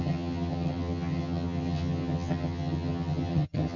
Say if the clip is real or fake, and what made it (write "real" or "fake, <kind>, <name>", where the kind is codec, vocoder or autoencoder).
fake, vocoder, HiFi-GAN